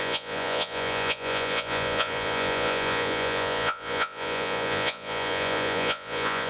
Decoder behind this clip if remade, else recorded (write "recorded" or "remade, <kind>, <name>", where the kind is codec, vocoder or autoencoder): remade, vocoder, Vocos